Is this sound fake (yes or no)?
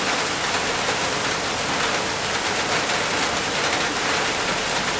no